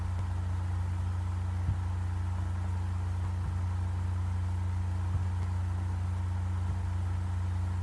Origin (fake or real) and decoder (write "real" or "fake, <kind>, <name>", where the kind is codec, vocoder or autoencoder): real